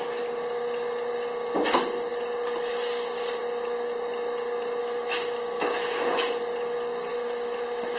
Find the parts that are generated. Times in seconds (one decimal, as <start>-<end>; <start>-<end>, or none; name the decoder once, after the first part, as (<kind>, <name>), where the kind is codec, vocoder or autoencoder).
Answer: 4.8-6.2 (autoencoder, DAC-VAE); 7.1-8.0